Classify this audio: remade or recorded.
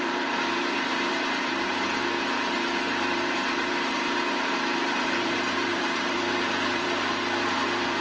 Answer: remade